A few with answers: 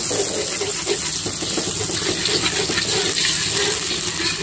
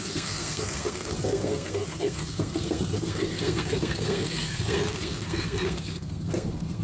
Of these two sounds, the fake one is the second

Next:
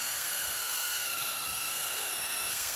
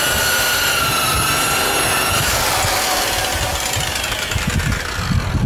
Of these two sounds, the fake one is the first